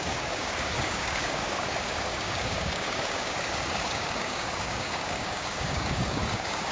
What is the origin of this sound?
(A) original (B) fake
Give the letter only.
B